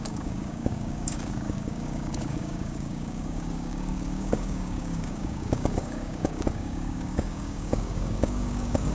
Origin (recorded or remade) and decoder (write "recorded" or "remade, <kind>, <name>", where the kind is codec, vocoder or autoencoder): remade, codec, DAC